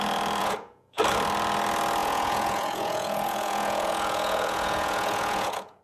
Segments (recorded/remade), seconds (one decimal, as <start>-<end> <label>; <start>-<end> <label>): 0.0-0.4 recorded; 0.4-1.0 remade; 1.0-2.0 recorded; 2.0-5.8 remade